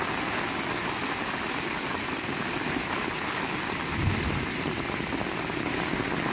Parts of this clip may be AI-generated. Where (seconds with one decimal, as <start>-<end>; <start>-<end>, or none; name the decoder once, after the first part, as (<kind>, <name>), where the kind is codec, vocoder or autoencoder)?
1.9-2.4 (vocoder, BigVGAN v2)